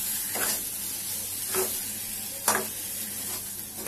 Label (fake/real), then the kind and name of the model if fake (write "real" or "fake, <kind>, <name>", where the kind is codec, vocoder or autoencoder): real